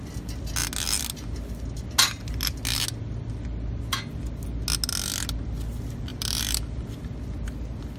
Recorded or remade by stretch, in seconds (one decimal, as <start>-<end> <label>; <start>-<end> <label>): 0.0-6.1 recorded; 6.1-7.0 remade; 7.0-8.0 recorded